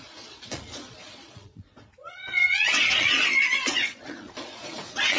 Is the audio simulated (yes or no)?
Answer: yes